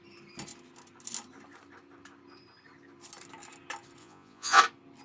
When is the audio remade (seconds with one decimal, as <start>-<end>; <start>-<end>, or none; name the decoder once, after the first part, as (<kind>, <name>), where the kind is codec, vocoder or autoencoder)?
4.0-4.6 (vocoder, Vocos)